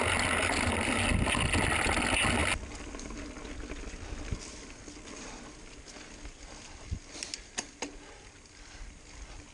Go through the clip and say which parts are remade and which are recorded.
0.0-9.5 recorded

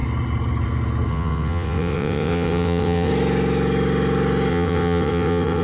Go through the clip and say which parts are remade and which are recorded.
0.0-1.1 recorded; 1.1-3.1 remade; 3.1-4.5 recorded; 4.5-5.6 remade

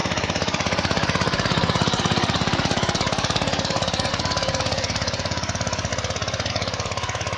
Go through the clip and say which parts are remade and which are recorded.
0.0-5.9 remade; 5.9-6.5 recorded; 6.5-7.4 remade